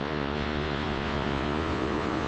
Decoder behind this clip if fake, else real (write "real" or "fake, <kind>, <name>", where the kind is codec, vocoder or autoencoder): fake, vocoder, Vocos